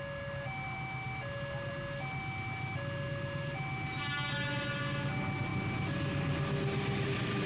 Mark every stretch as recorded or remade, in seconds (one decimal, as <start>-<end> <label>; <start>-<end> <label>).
0.0-7.5 recorded